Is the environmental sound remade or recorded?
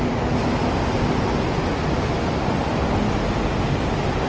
recorded